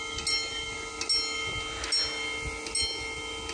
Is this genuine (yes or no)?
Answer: yes